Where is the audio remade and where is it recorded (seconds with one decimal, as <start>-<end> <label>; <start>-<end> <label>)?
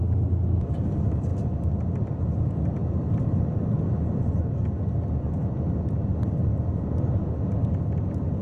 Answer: 0.0-1.3 recorded; 1.3-1.9 remade; 1.9-2.8 recorded; 2.8-3.4 remade; 3.4-8.4 recorded